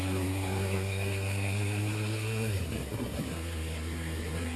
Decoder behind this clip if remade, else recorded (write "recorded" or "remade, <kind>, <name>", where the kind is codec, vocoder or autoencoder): remade, codec, SNAC